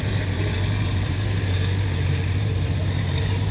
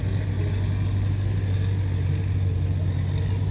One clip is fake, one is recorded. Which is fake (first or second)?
first